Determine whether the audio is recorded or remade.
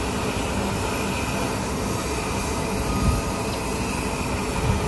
recorded